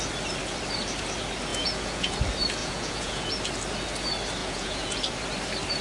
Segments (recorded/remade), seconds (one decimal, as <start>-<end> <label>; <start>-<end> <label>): 0.0-1.5 recorded; 1.5-2.1 remade; 2.1-2.6 recorded; 2.6-3.3 remade; 3.3-4.4 recorded; 4.4-5.0 remade; 5.0-5.8 recorded